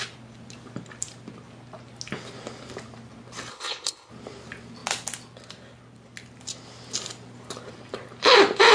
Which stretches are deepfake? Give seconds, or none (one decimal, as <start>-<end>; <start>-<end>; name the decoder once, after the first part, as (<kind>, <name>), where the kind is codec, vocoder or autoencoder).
3.5-4.1 (codec, HILCodec)